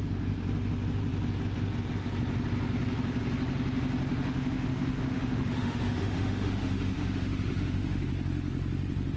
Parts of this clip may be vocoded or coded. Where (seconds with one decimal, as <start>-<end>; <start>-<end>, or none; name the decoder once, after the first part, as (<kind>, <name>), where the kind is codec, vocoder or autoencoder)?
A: 4.1-8.1 (autoencoder, DAC-VAE)